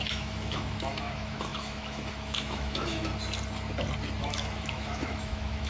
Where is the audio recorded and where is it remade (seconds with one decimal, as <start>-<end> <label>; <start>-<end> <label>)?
0.0-3.1 remade; 3.1-4.2 recorded; 4.2-5.7 remade